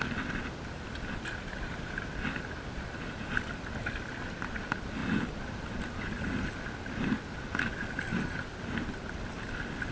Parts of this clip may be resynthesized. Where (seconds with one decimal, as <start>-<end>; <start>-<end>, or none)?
none